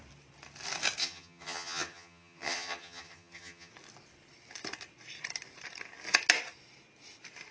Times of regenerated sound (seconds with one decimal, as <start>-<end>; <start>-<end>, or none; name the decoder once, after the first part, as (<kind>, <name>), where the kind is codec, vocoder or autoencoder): 1.0-3.7 (vocoder, HiFi-GAN)